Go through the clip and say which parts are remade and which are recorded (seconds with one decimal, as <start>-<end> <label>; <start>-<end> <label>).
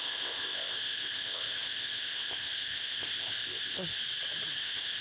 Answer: 0.0-4.0 remade; 4.0-4.6 recorded; 4.6-5.0 remade